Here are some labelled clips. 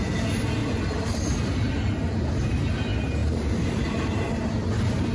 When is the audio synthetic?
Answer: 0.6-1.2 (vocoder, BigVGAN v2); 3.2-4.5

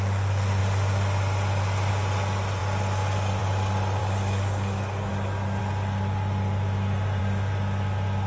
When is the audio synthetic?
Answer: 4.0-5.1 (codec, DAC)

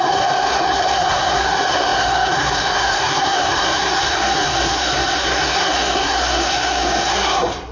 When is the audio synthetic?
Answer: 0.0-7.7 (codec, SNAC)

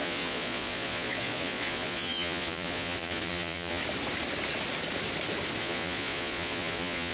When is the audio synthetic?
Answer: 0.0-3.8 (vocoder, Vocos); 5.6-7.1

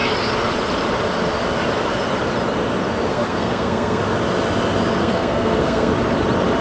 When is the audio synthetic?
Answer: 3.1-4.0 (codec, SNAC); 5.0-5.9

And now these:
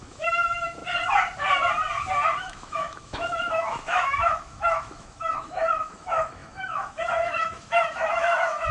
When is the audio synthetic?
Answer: 0.0-0.8 (autoencoder, DAC-VAE); 2.4-8.7

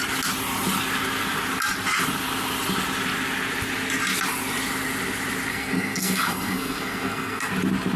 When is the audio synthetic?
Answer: 5.5-7.5 (codec, SNAC)